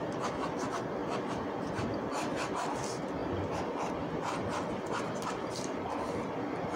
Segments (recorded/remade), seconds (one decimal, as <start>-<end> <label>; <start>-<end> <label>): 0.0-1.0 recorded; 1.0-2.5 remade; 2.5-6.8 recorded